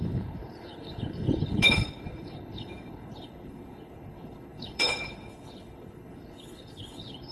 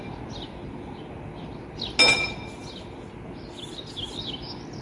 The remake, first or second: first